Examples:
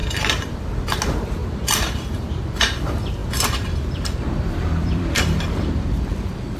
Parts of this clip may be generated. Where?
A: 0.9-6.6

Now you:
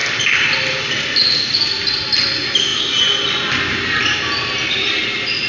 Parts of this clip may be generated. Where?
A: none

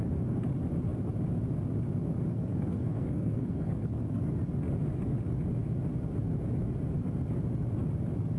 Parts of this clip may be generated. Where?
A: 2.3-4.3

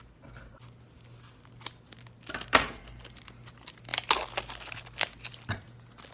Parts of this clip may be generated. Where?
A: none

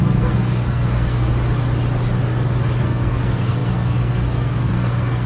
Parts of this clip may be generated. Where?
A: 0.0-1.3; 2.8-5.3